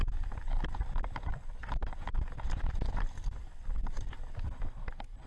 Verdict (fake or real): real